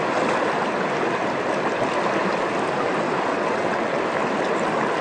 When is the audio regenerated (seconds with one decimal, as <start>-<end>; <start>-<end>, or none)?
3.3-4.0